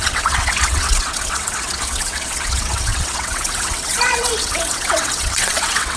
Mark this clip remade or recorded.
remade